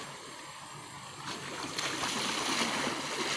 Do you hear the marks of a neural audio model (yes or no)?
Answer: no